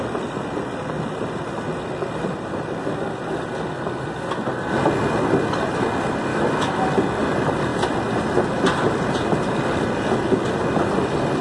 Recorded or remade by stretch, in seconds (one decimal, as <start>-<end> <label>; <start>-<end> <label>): 0.0-6.3 recorded; 6.3-6.8 remade; 6.8-11.4 recorded